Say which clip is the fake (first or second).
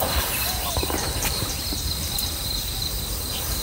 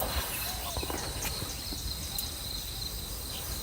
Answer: first